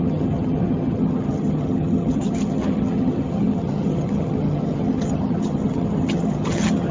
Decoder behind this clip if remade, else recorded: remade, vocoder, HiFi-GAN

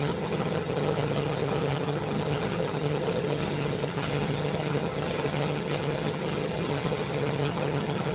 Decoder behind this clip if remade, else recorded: remade, vocoder, HiFi-GAN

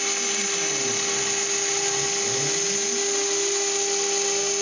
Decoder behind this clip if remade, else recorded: recorded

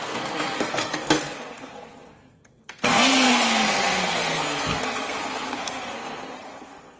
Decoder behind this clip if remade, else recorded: remade, codec, SNAC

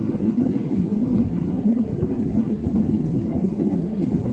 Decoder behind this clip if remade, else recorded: remade, codec, SNAC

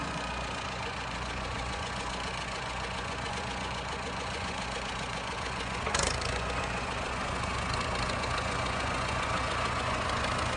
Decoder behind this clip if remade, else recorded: remade, vocoder, Vocos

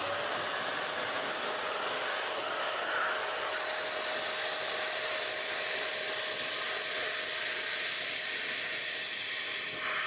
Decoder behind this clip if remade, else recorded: recorded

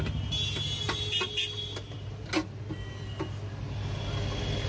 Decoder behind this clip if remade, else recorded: recorded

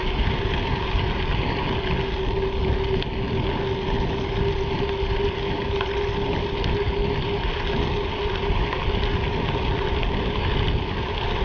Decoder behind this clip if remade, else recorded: recorded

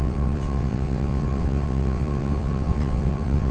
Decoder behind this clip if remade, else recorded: remade, vocoder, WaveNeXt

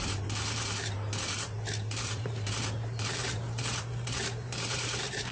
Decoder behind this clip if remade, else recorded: remade, vocoder, BigVGAN v2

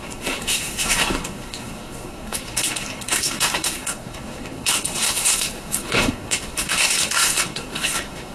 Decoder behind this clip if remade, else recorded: remade, codec, SNAC